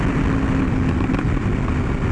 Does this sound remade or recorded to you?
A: recorded